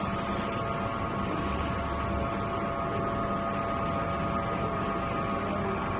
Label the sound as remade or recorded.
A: recorded